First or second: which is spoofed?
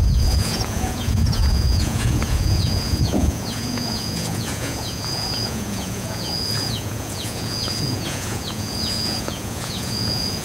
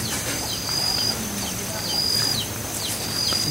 first